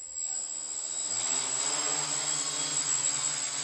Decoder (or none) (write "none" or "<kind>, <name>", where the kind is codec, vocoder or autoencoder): none